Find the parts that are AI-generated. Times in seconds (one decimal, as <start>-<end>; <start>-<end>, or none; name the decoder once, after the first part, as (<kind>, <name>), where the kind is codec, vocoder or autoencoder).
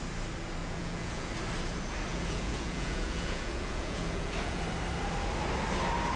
0.6-1.3 (vocoder, Vocos); 2.1-4.6